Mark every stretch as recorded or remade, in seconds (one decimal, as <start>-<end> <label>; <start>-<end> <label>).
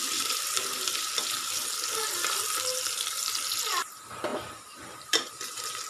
0.0-5.9 recorded